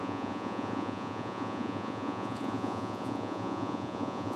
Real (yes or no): no